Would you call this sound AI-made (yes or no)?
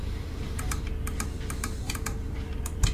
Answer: yes